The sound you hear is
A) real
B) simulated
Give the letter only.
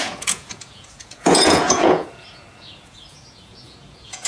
B